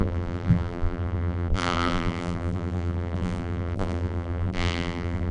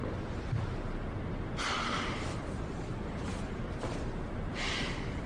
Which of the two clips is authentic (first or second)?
second